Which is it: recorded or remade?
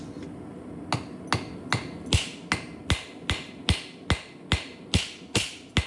recorded